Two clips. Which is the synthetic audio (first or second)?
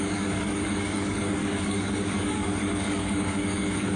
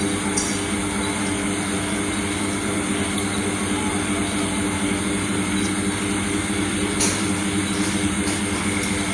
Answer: first